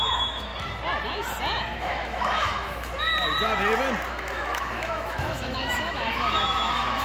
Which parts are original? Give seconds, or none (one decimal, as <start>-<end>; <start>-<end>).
0.5-1.8; 2.9-4.1